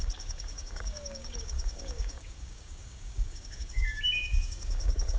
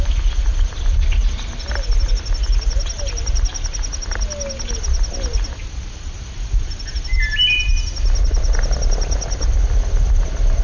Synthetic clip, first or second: first